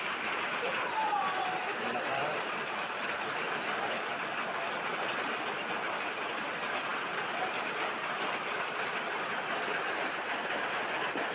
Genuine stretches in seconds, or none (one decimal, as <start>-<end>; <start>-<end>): 1.2-1.9; 6.9-8.6